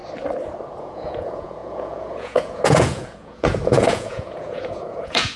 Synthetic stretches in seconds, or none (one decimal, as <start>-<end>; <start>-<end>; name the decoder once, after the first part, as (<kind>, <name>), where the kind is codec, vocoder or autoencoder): 0.8-5.4 (vocoder, Vocos)